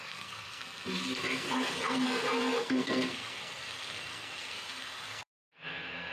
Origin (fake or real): fake